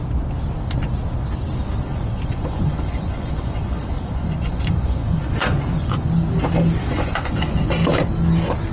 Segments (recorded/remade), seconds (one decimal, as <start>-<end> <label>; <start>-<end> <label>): 0.0-1.9 recorded; 1.9-6.1 remade; 6.1-6.8 recorded; 6.8-7.7 remade; 7.7-8.7 recorded